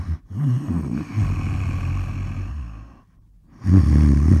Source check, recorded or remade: recorded